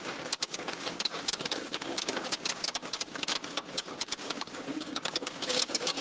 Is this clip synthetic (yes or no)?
yes